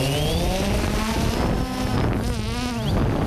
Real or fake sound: real